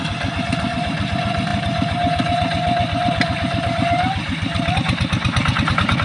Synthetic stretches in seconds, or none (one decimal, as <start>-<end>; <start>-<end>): none